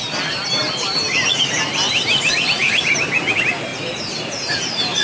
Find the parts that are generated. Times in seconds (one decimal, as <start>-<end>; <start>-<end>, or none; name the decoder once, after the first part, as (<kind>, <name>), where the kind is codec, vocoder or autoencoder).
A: none